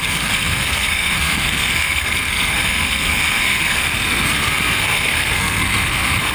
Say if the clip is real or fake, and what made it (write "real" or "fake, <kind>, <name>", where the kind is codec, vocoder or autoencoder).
fake, codec, SNAC